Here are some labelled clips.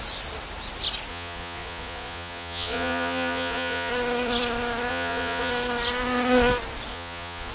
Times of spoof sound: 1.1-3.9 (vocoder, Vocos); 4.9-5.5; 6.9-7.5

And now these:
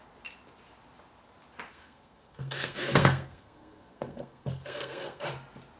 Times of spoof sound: 1.7-5.2 (codec, SNAC)

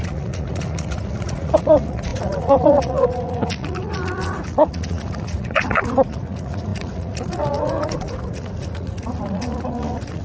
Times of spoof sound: 0.0-10.2 (vocoder, Vocos)

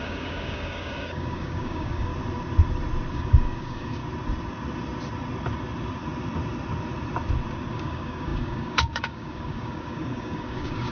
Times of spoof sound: 0.0-2.1 (codec, DAC); 3.1-4.0; 7.7-10.9

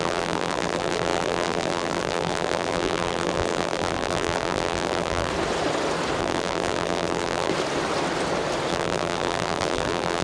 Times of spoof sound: 0.0-5.3 (vocoder, BigVGAN v2); 6.2-7.5; 8.7-10.2

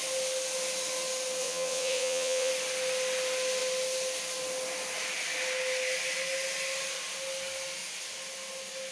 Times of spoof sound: 1.4-2.5 (vocoder, WaveNeXt)

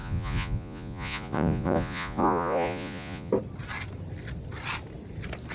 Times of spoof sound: 0.0-3.3 (vocoder, Vocos)

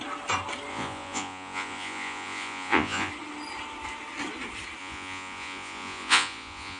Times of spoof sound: 0.7-3.1 (vocoder, Vocos); 4.8-6.8